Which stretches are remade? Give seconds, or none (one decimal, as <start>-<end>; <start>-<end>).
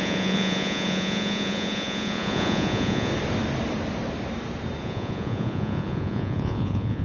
0.0-3.1; 4.8-7.0